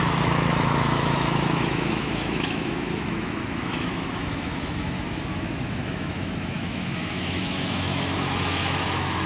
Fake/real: fake